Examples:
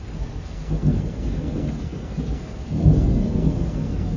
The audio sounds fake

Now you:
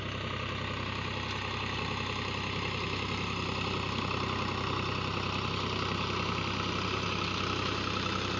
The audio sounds real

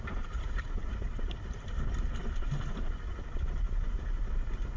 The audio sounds fake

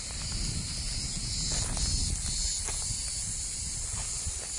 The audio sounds real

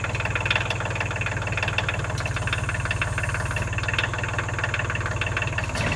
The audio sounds real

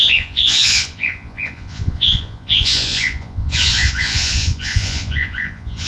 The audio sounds fake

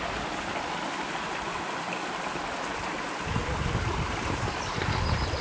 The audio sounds real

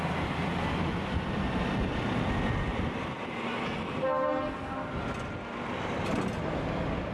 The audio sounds real